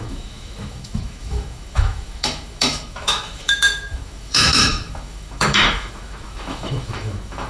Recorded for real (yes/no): no